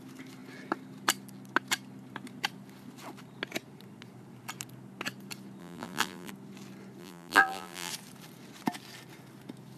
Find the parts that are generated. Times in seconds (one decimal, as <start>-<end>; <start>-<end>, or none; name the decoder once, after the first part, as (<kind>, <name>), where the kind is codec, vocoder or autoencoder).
5.6-6.3 (vocoder, BigVGAN v2); 7.0-7.9